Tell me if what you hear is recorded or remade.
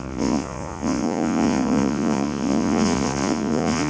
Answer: remade